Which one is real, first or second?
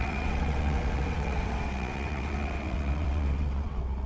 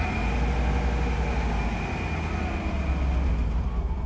second